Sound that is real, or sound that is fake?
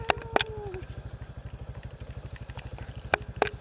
real